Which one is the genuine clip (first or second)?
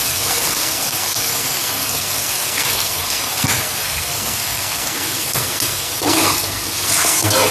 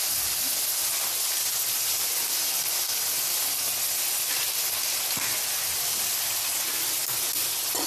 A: second